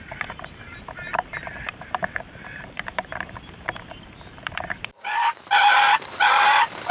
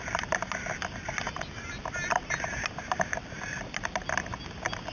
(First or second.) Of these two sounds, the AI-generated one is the first